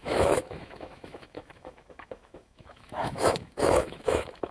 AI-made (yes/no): yes